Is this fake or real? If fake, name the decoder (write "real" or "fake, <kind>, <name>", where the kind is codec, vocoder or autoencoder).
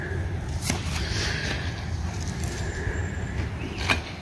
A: real